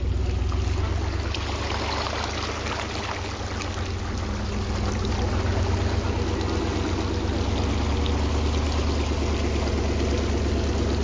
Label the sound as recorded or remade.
recorded